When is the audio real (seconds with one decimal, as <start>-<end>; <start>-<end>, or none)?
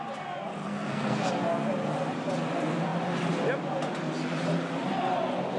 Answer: 0.0-0.6; 1.3-5.6